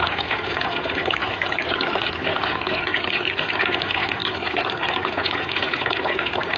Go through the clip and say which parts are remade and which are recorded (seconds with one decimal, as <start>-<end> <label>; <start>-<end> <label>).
0.0-1.2 recorded; 1.2-3.6 remade; 3.6-4.2 recorded; 4.2-5.1 remade; 5.1-6.6 recorded